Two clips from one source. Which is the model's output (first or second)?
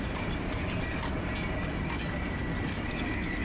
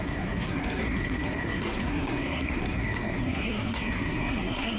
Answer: second